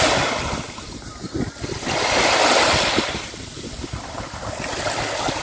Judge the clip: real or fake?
real